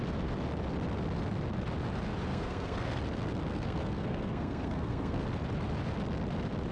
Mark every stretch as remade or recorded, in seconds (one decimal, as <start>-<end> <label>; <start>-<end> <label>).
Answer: 0.0-2.3 recorded; 2.3-3.0 remade; 3.0-3.5 recorded; 3.5-5.2 remade; 5.2-6.7 recorded